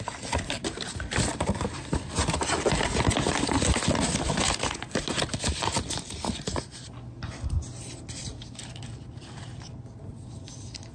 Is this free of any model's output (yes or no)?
yes